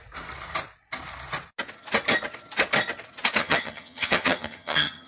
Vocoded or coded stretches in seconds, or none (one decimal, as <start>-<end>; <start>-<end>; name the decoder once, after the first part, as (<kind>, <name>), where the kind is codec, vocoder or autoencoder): 3.4-5.1 (vocoder, HiFi-GAN)